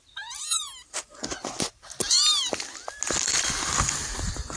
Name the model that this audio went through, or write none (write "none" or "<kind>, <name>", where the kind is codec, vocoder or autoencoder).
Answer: none